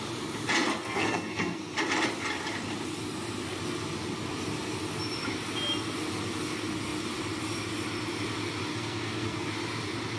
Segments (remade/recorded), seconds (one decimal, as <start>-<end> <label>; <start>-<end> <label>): 0.0-0.8 recorded; 0.8-1.6 remade; 1.6-8.7 recorded; 8.7-9.5 remade; 9.5-10.2 recorded